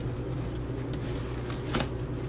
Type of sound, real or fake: real